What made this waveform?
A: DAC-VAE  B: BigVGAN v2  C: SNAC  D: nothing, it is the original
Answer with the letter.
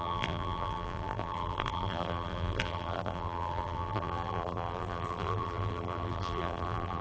B